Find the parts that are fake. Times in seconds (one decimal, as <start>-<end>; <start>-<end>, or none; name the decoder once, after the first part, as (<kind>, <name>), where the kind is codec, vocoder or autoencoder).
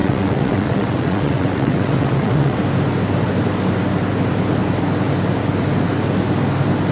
0.0-2.6 (vocoder, WaveNeXt)